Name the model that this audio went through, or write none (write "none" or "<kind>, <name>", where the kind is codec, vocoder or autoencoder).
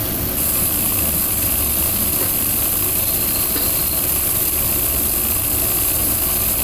none